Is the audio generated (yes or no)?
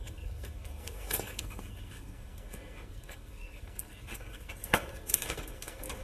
yes